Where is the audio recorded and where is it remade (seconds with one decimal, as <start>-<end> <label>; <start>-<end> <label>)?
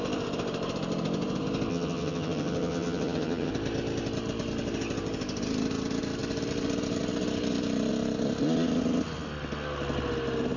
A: 0.0-1.7 recorded; 1.7-3.5 remade; 3.5-10.6 recorded